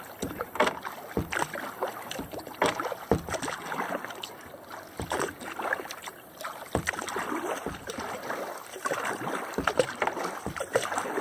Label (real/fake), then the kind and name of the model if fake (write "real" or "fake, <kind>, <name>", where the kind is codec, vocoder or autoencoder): real